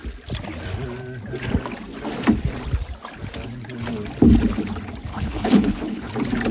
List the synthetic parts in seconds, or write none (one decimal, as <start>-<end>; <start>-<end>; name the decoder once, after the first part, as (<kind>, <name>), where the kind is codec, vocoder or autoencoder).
5.1-6.1 (codec, HILCodec)